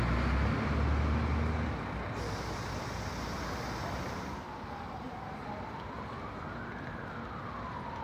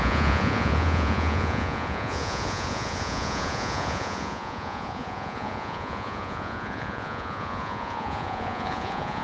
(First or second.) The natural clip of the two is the first